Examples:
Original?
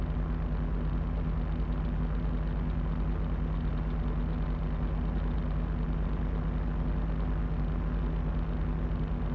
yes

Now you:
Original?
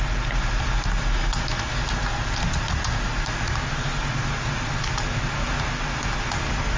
yes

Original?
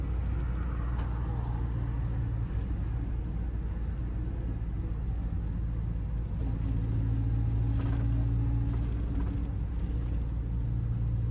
yes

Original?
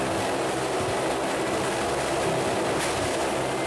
yes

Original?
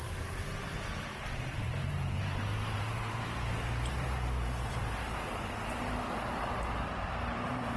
no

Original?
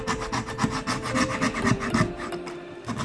yes